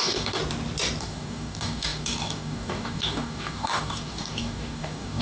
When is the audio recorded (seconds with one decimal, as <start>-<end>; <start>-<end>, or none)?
0.4-1.0